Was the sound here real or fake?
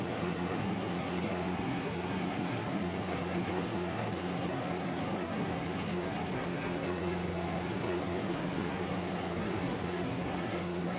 fake